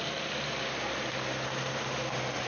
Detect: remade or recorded recorded